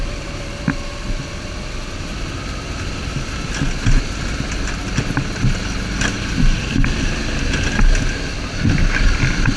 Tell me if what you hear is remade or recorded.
recorded